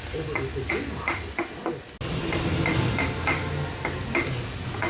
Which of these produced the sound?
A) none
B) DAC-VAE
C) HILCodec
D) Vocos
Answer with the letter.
A